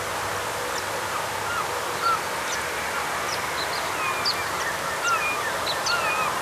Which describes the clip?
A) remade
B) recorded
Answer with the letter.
B